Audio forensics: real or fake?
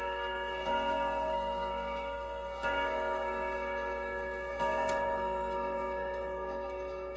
fake